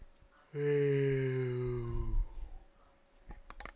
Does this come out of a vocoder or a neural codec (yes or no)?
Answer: no